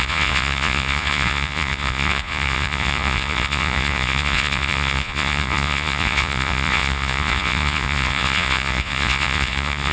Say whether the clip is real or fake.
fake